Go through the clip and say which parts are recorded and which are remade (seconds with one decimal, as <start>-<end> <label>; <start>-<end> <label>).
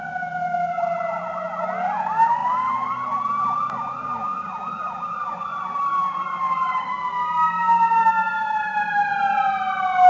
0.0-10.1 recorded